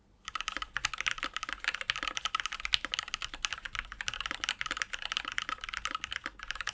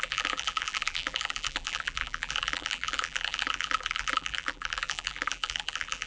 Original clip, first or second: first